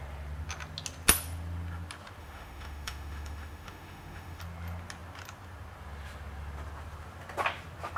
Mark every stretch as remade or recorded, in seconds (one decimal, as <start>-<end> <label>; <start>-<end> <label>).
0.0-2.2 recorded; 2.2-4.4 remade; 4.4-8.0 recorded